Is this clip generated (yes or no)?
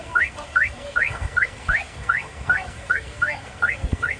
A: yes